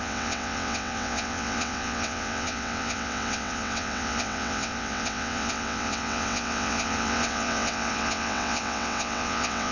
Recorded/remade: remade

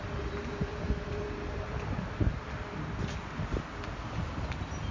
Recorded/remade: recorded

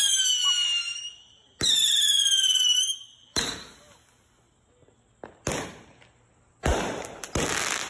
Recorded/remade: recorded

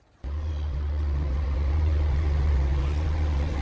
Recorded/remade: remade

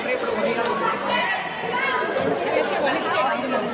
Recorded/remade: recorded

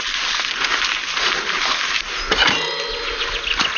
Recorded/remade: recorded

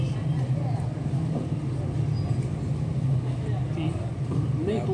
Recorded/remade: recorded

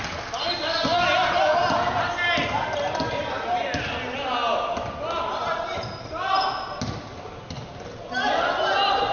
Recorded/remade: recorded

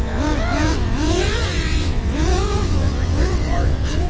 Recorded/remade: remade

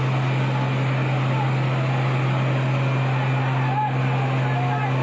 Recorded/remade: recorded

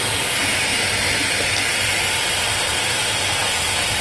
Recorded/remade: recorded